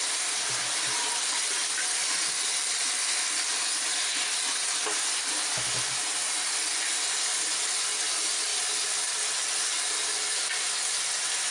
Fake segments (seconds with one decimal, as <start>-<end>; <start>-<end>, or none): none

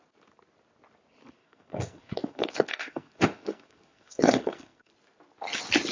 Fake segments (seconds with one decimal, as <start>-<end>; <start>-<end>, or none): 1.4-4.9

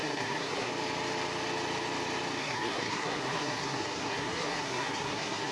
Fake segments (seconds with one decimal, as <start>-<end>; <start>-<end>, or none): 0.0-0.7; 2.4-5.5

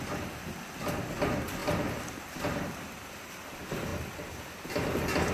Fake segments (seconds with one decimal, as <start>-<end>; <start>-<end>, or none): none

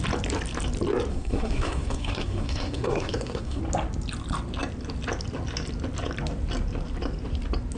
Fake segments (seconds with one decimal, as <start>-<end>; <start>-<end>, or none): 1.1-3.6

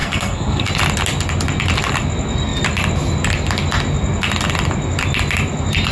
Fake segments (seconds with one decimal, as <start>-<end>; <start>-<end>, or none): 0.0-0.7